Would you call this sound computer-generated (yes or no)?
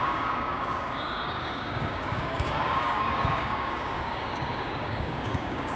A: yes